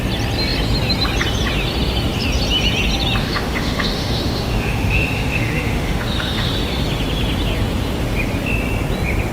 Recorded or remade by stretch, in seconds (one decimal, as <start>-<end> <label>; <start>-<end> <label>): 0.0-3.2 recorded; 3.2-6.5 remade; 6.5-9.3 recorded